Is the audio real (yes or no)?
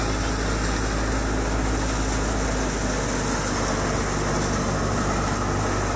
yes